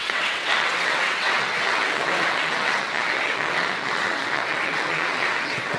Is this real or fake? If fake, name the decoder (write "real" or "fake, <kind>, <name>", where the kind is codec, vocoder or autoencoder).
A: fake, vocoder, WaveNeXt